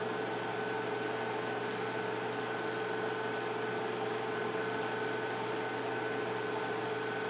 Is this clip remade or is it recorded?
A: recorded